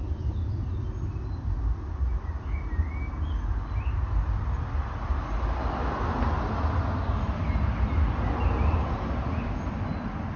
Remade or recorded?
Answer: recorded